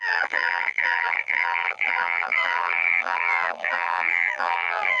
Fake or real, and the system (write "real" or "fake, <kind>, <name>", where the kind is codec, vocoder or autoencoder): fake, vocoder, BigVGAN v2